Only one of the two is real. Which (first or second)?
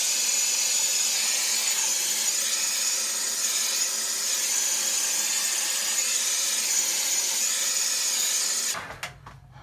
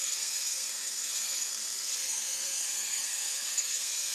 first